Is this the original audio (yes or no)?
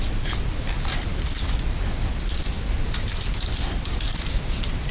yes